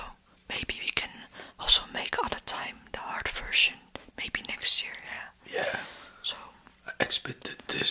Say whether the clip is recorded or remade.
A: recorded